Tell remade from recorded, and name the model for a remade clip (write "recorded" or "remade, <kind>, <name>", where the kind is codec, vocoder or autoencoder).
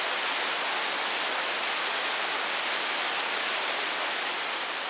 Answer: recorded